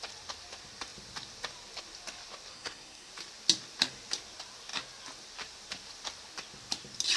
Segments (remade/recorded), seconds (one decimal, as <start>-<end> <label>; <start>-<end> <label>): 0.0-2.5 recorded; 2.5-3.1 remade; 3.1-7.2 recorded